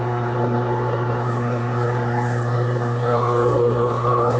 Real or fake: fake